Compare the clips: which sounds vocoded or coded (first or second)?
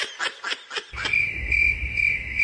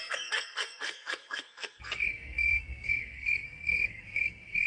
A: second